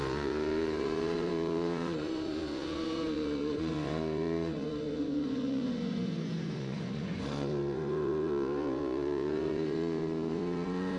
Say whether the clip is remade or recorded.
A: remade